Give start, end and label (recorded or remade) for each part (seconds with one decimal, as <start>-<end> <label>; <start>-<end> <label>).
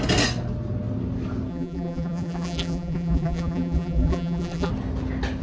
0.0-1.5 recorded; 1.5-4.7 remade; 4.7-5.4 recorded